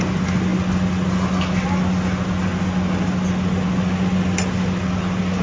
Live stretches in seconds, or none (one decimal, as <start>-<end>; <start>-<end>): 0.0-5.4